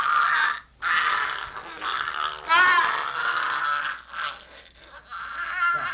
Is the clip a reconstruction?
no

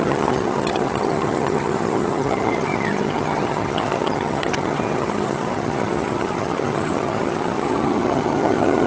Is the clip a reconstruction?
yes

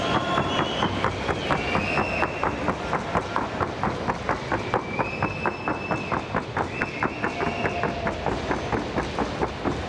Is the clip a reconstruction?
no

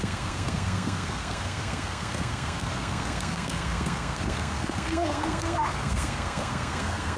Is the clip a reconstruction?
yes